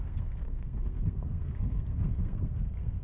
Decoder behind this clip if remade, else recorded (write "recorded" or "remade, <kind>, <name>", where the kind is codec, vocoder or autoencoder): remade, codec, SNAC